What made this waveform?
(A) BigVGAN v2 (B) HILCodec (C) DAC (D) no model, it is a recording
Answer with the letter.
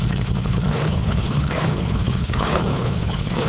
B